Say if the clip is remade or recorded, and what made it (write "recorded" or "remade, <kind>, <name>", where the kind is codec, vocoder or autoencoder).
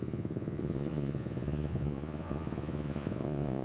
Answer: remade, vocoder, Vocos